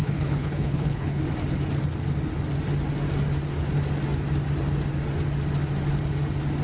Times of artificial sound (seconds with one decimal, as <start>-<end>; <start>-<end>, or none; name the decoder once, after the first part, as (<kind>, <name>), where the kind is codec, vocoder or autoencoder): 0.0-1.2 (codec, HILCodec)